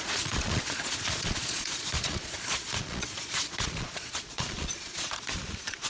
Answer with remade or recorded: remade